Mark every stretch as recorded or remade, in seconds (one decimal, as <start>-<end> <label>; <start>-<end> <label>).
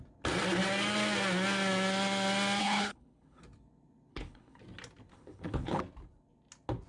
0.0-2.6 recorded; 2.6-3.4 remade; 3.4-4.1 recorded; 4.1-4.6 remade; 4.6-5.1 recorded; 5.1-5.8 remade; 5.8-6.9 recorded